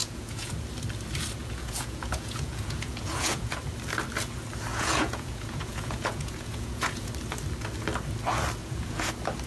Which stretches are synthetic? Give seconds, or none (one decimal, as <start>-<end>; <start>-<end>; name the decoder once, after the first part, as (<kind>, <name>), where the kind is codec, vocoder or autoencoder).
0.0-0.5 (vocoder, Vocos); 1.4-3.6; 4.7-7.1; 8.6-9.1